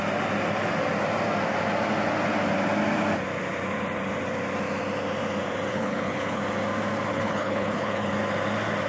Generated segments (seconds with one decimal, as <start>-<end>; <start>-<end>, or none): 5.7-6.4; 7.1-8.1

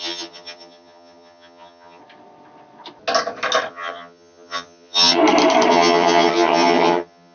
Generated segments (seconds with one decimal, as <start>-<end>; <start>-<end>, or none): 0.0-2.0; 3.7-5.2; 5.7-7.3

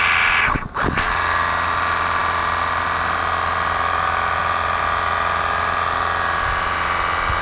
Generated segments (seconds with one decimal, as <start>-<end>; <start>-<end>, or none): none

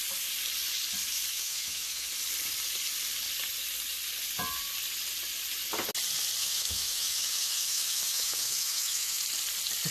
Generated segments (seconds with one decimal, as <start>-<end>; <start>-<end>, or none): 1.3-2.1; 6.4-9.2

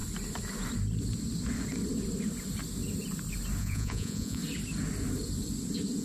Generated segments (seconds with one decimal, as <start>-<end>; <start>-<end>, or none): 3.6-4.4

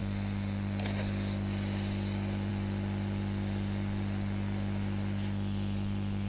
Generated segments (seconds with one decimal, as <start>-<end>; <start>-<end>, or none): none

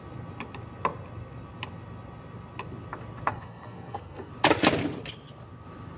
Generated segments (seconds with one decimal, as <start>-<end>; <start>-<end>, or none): 3.3-4.3